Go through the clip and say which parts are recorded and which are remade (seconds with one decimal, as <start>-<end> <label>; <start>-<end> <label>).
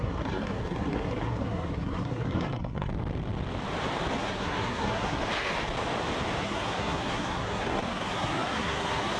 0.0-2.9 remade; 2.9-4.2 recorded; 4.2-5.2 remade; 5.2-6.4 recorded; 6.4-9.2 remade